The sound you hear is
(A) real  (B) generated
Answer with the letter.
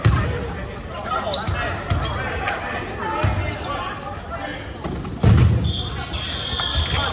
A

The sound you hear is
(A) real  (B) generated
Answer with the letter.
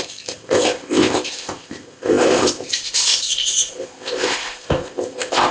B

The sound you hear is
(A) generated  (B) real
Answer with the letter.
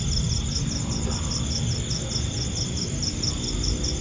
B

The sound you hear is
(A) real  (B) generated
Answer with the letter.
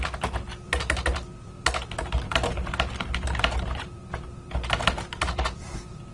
A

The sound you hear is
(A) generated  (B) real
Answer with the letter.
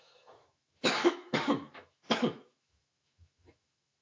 A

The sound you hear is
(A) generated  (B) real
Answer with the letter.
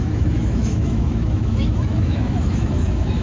A